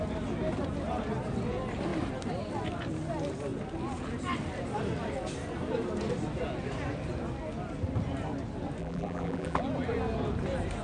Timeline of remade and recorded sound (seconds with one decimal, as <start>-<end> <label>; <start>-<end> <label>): 0.0-8.8 recorded; 8.8-9.6 remade; 9.6-10.8 recorded